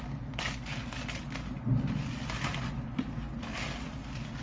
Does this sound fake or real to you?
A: real